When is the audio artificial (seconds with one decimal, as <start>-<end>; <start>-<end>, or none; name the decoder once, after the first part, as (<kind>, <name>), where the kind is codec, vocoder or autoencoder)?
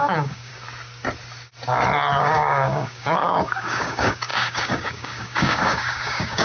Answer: 0.0-0.5 (codec, DAC); 2.2-6.4